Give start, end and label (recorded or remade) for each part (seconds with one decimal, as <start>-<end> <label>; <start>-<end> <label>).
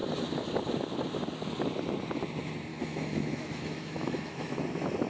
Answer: 0.0-2.7 recorded; 2.7-4.6 remade; 4.6-5.1 recorded